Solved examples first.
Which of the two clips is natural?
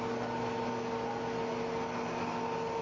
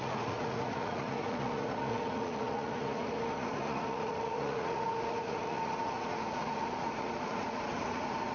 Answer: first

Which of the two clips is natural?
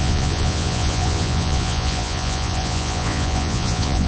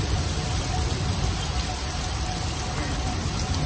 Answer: second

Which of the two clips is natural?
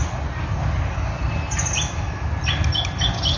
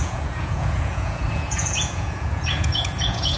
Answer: first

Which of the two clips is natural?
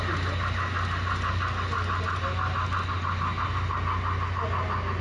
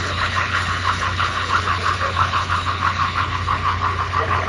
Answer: first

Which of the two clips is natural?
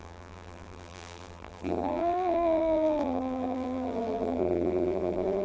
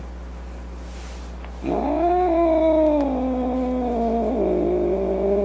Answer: second